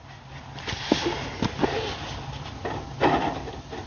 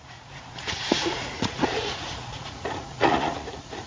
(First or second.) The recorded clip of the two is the first